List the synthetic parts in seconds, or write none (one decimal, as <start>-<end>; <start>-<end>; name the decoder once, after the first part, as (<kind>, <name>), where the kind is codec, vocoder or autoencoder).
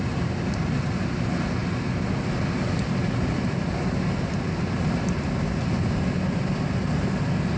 none